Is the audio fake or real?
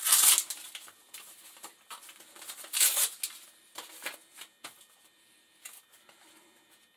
real